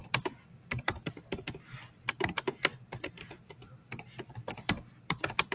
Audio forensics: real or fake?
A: fake